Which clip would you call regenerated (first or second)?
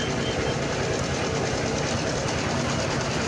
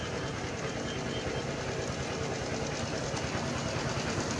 first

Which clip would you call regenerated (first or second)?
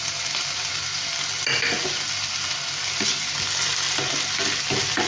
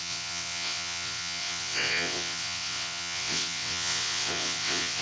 second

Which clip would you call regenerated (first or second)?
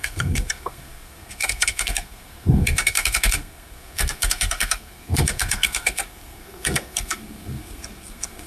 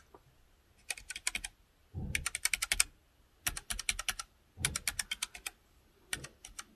first